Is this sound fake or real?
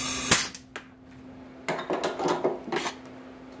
real